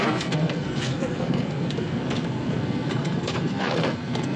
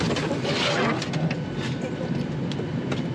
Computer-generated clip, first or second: first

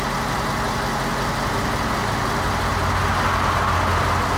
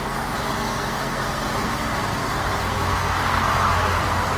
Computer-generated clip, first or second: second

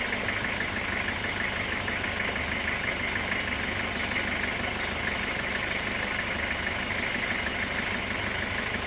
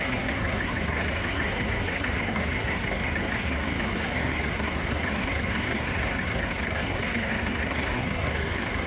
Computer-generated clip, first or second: second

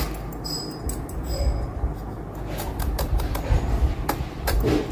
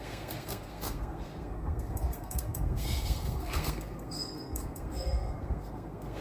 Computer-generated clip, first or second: second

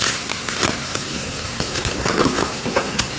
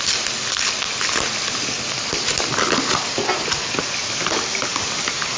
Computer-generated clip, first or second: first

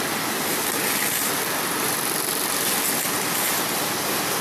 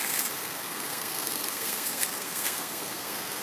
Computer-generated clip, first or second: second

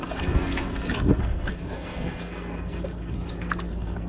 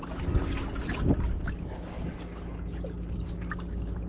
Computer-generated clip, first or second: first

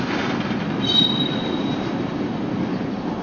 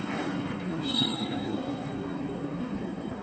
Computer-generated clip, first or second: second